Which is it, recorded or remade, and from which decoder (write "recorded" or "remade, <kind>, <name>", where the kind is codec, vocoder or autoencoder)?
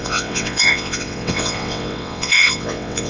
remade, vocoder, WaveNeXt